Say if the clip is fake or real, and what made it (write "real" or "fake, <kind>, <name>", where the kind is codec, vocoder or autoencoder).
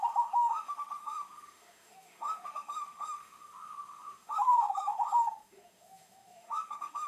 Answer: fake, autoencoder, DAC-VAE